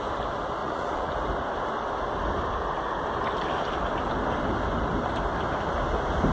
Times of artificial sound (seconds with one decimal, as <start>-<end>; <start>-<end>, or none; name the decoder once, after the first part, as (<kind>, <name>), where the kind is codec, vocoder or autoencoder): 0.6-1.1 (vocoder, Vocos)